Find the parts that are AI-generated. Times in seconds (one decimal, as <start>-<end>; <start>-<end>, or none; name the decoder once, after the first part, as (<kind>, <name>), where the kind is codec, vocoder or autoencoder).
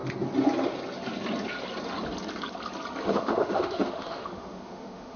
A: 3.1-5.2 (autoencoder, DAC-VAE)